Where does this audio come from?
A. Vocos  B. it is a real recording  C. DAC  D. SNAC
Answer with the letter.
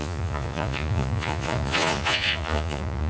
A